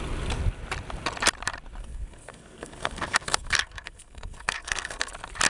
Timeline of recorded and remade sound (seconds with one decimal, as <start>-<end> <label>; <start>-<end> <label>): 0.0-1.8 recorded; 1.8-5.1 remade; 5.1-5.5 recorded